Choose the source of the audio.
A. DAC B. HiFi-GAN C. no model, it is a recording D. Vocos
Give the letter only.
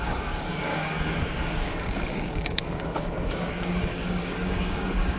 A